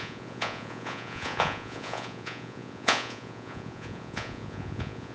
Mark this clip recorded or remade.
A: remade